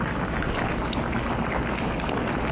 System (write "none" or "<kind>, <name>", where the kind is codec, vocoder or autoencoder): none